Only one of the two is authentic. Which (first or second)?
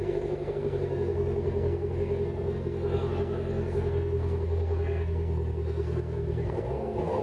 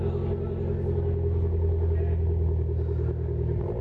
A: second